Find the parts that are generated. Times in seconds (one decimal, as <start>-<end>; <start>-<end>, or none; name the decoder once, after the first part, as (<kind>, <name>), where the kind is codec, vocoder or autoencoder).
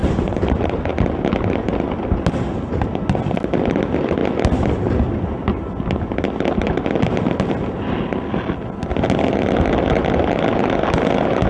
0.0-0.9 (vocoder, BigVGAN v2)